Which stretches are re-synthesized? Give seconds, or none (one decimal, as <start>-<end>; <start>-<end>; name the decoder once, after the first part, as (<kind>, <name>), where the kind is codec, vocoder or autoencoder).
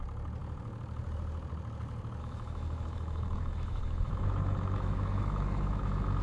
2.2-6.2 (autoencoder, DAC-VAE)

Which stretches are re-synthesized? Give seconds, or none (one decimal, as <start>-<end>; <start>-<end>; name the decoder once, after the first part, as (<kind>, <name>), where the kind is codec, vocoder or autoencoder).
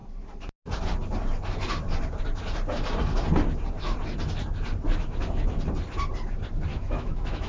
6.7-7.5 (autoencoder, DAC-VAE)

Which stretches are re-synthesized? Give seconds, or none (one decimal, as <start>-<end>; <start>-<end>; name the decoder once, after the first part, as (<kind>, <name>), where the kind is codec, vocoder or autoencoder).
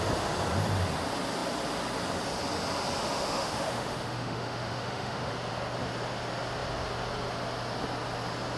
3.0-5.3 (autoencoder, DAC-VAE)